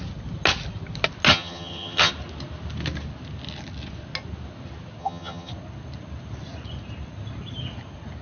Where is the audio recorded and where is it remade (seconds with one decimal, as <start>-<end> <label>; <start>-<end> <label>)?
0.0-1.3 recorded; 1.3-2.1 remade; 2.1-5.0 recorded; 5.0-5.5 remade; 5.5-8.2 recorded